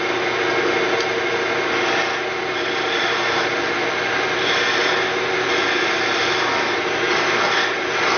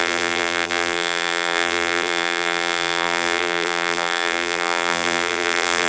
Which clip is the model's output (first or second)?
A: second